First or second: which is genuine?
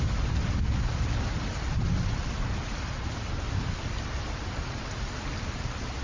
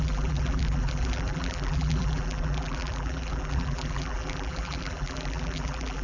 first